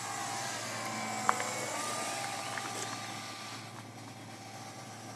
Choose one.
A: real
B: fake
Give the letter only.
A